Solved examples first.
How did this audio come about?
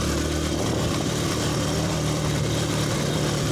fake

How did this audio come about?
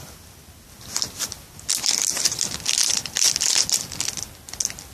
real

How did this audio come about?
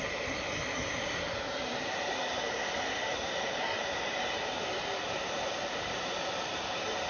fake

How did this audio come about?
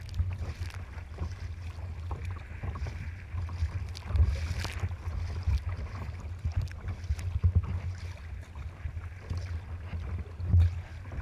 real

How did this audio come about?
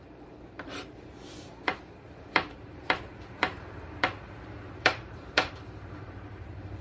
fake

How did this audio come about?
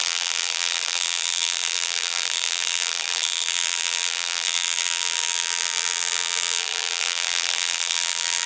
fake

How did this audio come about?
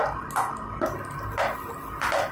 real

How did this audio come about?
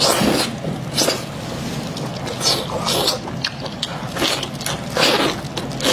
real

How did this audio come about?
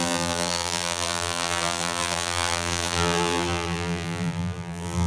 fake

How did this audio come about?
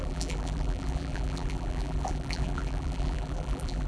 fake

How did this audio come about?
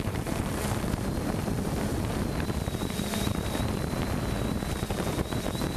fake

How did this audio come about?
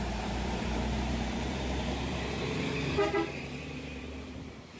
fake